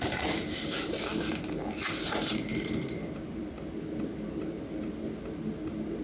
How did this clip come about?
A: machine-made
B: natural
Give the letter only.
B